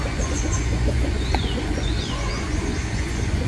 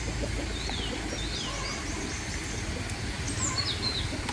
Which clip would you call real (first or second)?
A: second